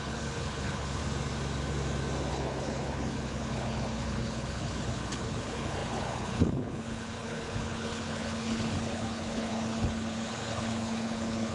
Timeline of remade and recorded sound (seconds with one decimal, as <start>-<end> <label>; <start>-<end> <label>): 0.0-1.0 remade; 1.0-2.3 recorded; 2.3-11.5 remade